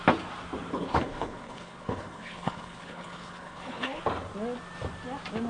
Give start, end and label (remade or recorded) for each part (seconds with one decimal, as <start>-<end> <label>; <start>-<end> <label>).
0.0-0.7 recorded; 0.7-4.0 remade; 4.0-5.5 recorded